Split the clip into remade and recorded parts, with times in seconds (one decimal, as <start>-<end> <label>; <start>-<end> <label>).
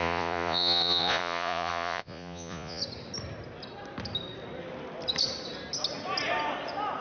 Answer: 0.0-2.8 remade; 2.8-7.0 recorded